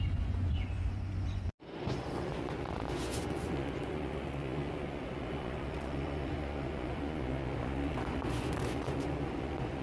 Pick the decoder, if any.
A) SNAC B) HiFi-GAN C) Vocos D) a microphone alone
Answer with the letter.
C